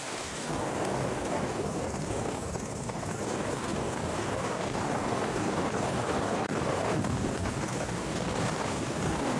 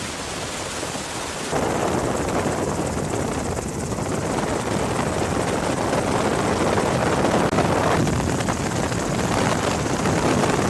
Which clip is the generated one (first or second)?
first